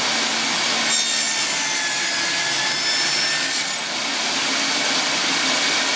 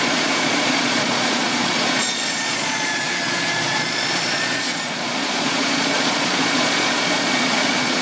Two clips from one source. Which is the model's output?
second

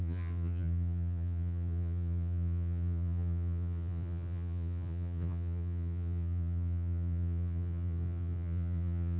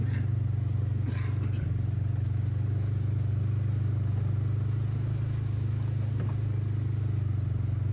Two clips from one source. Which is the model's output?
first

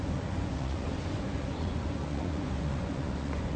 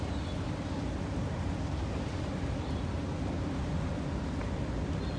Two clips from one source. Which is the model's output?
first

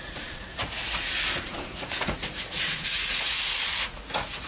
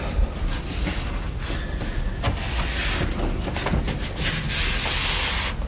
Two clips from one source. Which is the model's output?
first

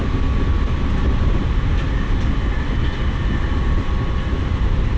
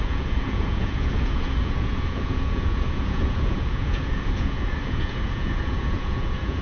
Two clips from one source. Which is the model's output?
second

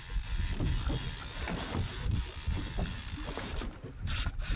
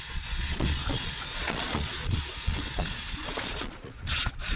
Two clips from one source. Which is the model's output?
second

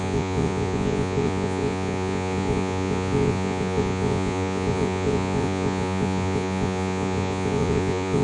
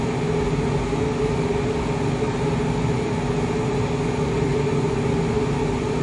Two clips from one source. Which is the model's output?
first